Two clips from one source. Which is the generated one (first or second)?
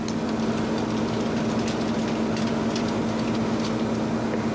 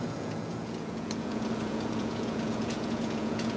second